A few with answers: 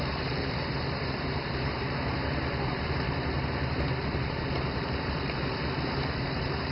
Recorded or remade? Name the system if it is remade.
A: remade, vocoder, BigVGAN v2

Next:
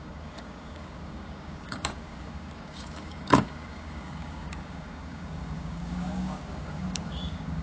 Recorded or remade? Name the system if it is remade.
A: remade, codec, DAC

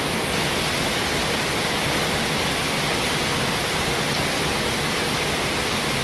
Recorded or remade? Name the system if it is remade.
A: recorded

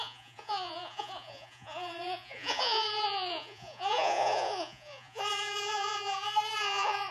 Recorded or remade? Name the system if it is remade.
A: remade, vocoder, Vocos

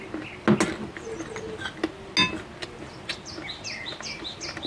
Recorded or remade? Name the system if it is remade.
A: recorded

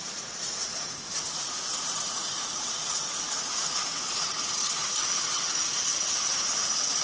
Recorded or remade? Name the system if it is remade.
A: remade, vocoder, Vocos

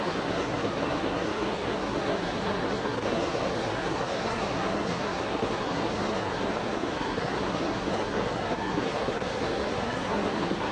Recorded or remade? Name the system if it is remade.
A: remade, codec, SNAC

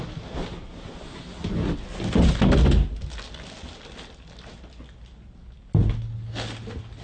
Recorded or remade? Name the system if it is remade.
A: recorded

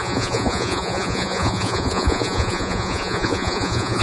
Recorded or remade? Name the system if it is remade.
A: remade, vocoder, Vocos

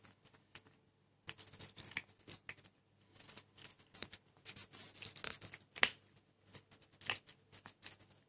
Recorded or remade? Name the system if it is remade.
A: recorded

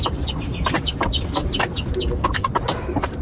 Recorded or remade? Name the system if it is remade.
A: recorded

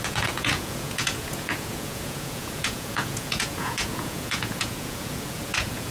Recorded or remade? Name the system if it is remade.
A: remade, vocoder, Vocos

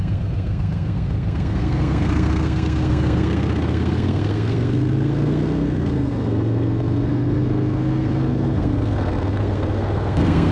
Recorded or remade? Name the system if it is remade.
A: remade, codec, SNAC